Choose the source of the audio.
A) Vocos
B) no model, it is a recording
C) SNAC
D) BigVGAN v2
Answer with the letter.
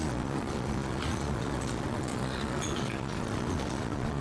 A